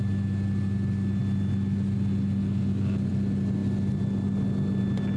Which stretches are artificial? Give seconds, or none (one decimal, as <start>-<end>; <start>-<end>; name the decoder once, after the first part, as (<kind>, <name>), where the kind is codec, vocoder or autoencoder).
none